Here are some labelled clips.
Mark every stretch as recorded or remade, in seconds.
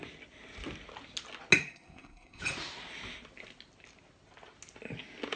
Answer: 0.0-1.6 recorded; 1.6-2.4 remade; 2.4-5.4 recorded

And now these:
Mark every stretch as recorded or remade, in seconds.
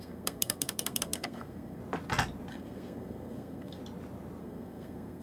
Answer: 0.0-1.8 remade; 1.8-2.5 recorded; 2.5-3.8 remade; 3.8-4.4 recorded; 4.4-5.2 remade